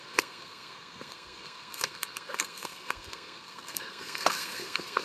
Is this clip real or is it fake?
fake